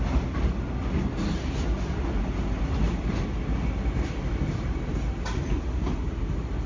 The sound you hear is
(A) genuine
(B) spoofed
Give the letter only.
A